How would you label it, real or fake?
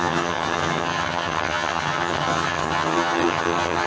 fake